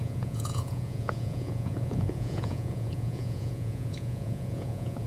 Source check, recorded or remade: remade